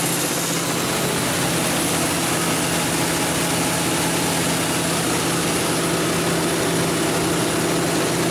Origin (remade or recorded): recorded